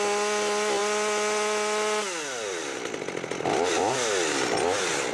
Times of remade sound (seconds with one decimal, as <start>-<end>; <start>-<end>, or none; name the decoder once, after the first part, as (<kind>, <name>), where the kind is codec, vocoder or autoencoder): none

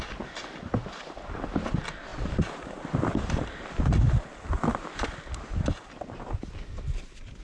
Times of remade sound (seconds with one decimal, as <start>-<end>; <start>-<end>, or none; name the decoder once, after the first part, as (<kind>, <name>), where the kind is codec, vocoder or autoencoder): none

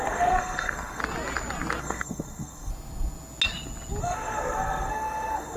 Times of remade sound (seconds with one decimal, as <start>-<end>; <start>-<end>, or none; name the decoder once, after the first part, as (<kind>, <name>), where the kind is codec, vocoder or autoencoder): 0.0-1.0 (codec, SNAC); 1.8-2.7; 4.0-5.6

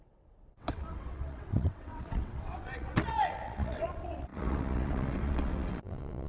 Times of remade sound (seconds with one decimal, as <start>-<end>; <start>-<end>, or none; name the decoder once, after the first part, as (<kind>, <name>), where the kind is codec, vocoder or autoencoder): 0.0-6.3 (vocoder, WaveNeXt)